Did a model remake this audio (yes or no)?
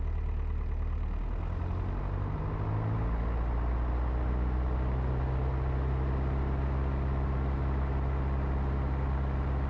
no